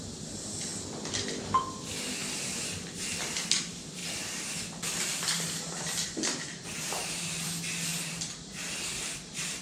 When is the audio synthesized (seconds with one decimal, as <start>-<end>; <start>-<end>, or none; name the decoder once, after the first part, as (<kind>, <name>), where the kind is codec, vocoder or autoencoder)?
0.0-2.2 (vocoder, BigVGAN v2); 3.3-9.6